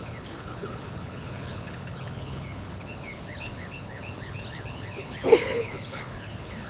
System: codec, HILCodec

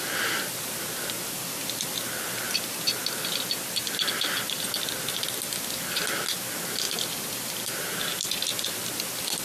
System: none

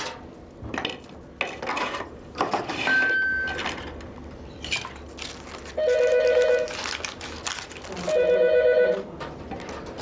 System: none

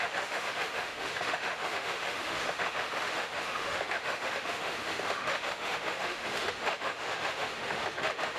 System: autoencoder, DAC-VAE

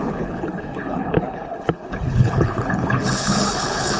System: codec, HILCodec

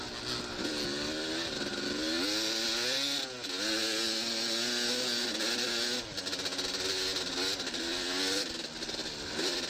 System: none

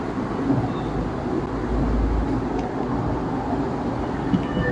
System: none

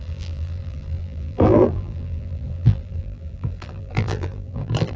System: vocoder, BigVGAN v2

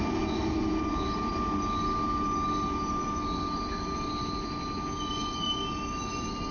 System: none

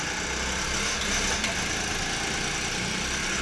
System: none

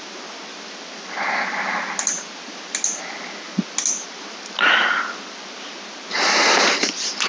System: none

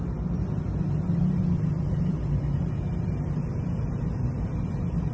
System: vocoder, BigVGAN v2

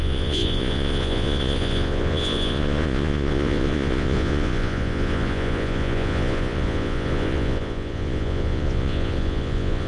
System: vocoder, Vocos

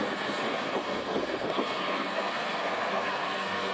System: codec, SNAC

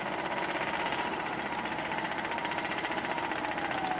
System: vocoder, BigVGAN v2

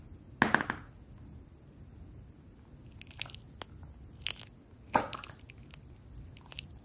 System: none